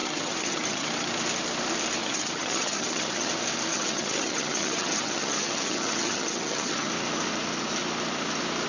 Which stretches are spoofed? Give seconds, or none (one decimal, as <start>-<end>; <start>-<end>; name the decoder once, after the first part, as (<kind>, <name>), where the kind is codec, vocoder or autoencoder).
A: 0.0-0.9 (vocoder, HiFi-GAN); 2.0-3.3; 3.7-6.9